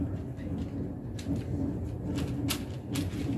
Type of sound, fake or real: real